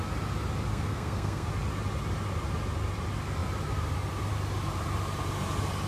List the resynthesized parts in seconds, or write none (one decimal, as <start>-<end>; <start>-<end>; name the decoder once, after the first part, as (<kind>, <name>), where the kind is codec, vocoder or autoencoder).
0.7-1.5 (codec, SNAC)